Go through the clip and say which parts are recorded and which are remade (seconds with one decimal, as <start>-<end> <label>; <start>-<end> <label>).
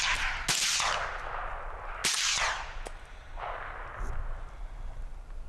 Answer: 0.0-5.5 recorded